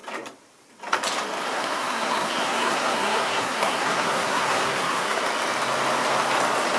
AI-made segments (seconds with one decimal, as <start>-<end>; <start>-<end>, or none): 1.5-5.2